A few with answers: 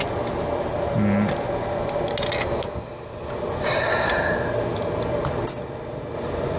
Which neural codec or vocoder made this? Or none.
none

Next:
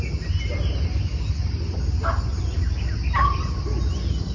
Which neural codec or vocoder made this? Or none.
none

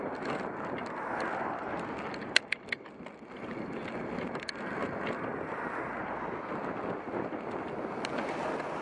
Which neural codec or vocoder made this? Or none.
none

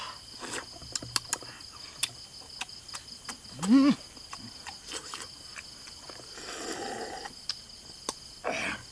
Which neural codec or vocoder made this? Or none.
none